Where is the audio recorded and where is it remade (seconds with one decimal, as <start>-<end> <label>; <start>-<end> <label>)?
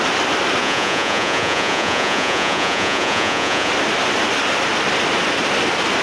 0.0-0.6 recorded; 0.6-3.7 remade; 3.7-6.0 recorded